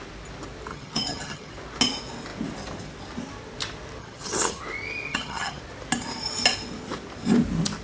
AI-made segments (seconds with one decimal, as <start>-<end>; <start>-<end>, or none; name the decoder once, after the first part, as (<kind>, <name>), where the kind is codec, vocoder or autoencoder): 0.7-1.5 (vocoder, HiFi-GAN); 4.0-4.6; 5.1-5.6